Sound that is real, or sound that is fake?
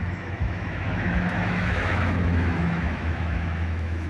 fake